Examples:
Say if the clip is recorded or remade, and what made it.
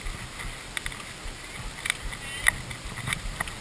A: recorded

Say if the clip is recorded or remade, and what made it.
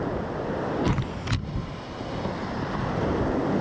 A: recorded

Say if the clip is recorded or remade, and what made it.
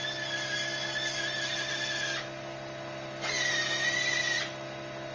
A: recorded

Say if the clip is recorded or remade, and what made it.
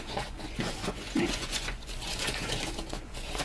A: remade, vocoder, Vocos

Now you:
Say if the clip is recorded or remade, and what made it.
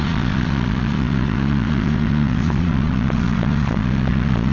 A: remade, vocoder, Vocos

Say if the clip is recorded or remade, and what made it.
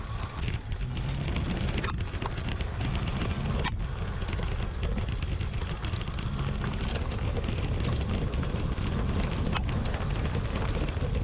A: recorded